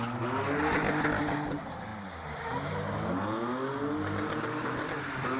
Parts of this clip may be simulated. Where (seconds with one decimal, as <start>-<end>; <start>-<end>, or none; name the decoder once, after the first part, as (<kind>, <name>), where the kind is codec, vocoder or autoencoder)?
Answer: none